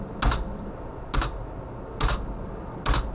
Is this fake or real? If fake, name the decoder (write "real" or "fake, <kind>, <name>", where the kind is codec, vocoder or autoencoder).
real